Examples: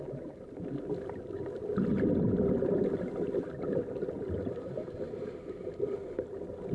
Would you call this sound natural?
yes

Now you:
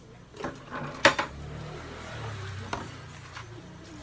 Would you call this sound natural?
yes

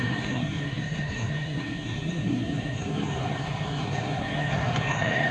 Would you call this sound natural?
no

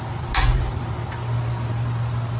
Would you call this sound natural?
yes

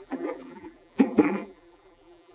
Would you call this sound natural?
no